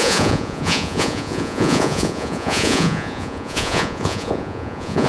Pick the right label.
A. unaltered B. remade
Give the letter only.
B